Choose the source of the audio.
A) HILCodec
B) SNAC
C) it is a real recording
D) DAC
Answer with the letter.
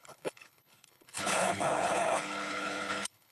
A